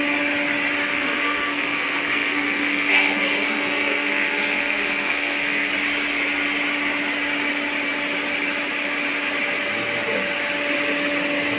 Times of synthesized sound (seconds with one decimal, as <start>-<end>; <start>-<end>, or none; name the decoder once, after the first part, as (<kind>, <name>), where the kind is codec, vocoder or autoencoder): 0.9-5.7 (codec, SNAC)